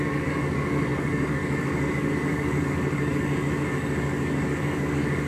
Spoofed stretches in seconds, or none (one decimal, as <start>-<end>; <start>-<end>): 0.0-5.3